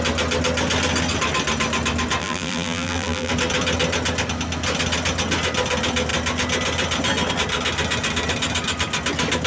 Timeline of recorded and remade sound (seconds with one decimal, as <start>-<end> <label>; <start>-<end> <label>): 0.0-2.2 recorded; 2.2-3.3 remade; 3.3-9.5 recorded